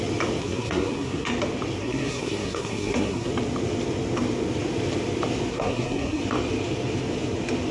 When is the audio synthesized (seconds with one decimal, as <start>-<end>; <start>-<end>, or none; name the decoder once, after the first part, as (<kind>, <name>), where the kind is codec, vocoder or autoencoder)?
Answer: 0.4-1.3 (codec, SNAC); 1.8-3.3; 5.5-6.2